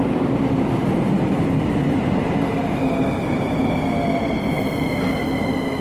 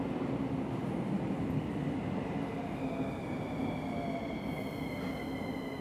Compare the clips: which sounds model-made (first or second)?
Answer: first